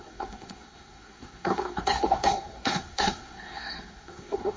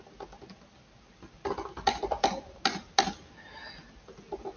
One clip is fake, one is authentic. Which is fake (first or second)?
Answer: first